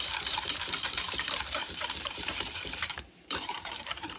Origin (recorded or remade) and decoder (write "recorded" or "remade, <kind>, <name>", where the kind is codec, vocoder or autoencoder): remade, vocoder, BigVGAN v2